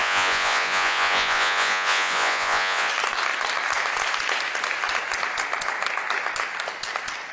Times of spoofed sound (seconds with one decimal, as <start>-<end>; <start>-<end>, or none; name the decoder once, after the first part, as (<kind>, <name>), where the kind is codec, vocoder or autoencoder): 0.0-2.9 (vocoder, Vocos)